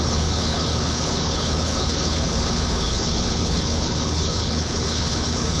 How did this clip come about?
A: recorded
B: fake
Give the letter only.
B